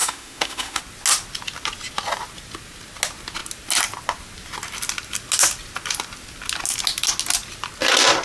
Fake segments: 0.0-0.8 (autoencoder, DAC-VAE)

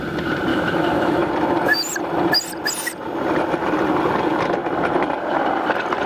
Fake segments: 0.5-1.3 (autoencoder, DAC-VAE)